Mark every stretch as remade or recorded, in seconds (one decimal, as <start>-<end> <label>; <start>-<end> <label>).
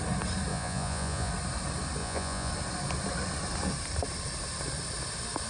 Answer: 0.0-0.5 recorded; 0.5-1.3 remade; 1.3-2.0 recorded; 2.0-2.5 remade; 2.5-5.5 recorded